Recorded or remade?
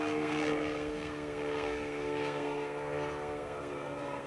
remade